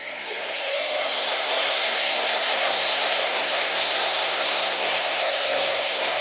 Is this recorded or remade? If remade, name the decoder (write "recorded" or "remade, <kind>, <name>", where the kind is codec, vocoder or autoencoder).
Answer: remade, codec, SNAC